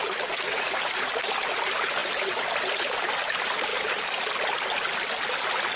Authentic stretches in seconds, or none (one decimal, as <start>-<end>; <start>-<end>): 0.0-0.5; 1.1-5.8